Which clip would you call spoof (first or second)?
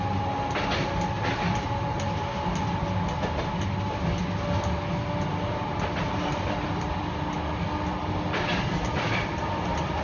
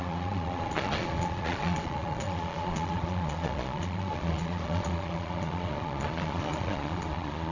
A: second